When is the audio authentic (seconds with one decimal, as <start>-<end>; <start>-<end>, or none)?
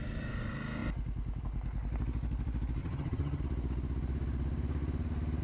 0.0-2.8; 3.4-5.4